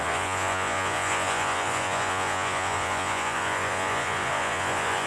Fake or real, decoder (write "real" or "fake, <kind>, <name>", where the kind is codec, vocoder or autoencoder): fake, vocoder, Vocos